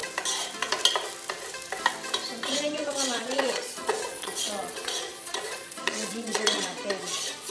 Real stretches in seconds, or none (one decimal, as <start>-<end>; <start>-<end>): 0.0-2.5